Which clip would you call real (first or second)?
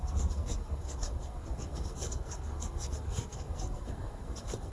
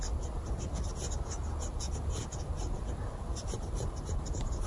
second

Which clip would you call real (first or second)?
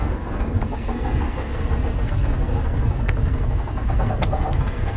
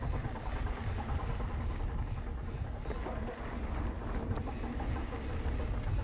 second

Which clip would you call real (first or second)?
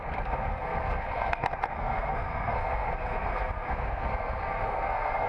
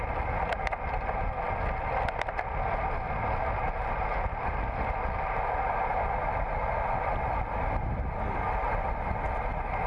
second